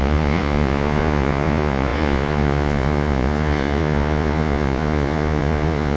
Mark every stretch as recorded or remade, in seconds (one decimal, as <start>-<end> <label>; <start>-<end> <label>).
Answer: 0.0-6.0 remade